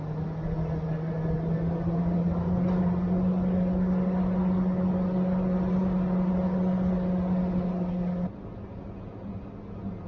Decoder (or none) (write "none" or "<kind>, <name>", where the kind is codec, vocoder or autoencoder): none